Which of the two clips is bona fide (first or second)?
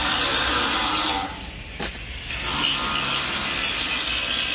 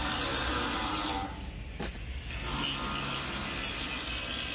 second